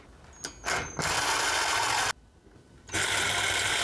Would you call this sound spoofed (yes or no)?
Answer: no